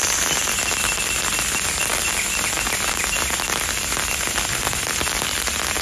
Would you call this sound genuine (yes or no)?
yes